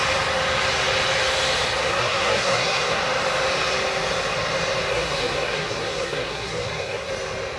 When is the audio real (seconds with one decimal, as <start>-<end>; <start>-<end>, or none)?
0.0-1.9; 3.0-4.9; 7.1-7.6